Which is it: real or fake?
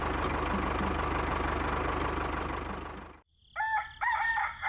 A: real